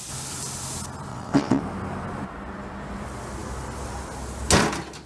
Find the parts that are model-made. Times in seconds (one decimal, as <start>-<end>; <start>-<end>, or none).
1.1-1.6